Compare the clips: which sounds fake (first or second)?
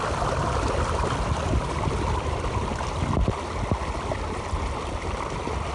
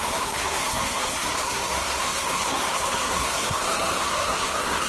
second